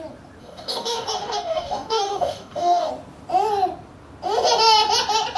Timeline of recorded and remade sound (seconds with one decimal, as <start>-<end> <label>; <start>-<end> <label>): 0.0-0.4 recorded; 0.4-2.9 remade; 2.9-5.4 recorded